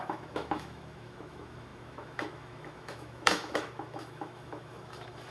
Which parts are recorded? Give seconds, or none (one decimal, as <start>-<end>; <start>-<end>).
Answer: none